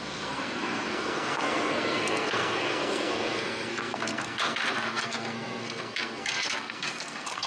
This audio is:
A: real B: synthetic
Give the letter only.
B